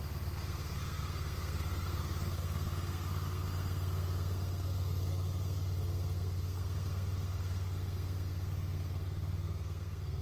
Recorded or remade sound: remade